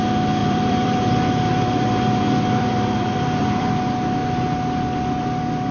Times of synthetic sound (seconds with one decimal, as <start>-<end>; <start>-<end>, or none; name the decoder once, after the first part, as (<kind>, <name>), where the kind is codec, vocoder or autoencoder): 0.4-3.8 (vocoder, BigVGAN v2)